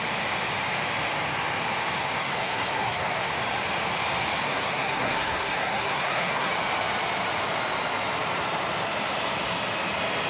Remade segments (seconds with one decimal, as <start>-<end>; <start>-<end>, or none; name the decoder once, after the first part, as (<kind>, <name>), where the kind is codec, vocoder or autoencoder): 2.2-3.3 (codec, SNAC); 4.4-6.5